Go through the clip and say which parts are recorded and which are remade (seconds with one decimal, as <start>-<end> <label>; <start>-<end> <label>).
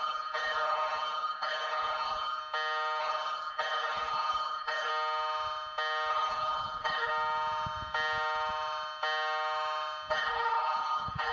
0.0-2.4 remade; 2.4-3.0 recorded; 3.0-4.9 remade; 4.9-6.1 recorded; 6.1-7.1 remade; 7.1-10.1 recorded; 10.1-11.3 remade